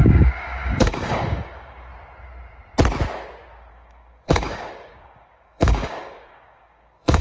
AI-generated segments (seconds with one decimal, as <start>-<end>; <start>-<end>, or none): 0.0-1.9; 3.7-7.2